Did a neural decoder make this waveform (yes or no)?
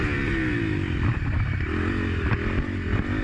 no